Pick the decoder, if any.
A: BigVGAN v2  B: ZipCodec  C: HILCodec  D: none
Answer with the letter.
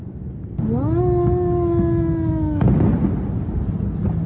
D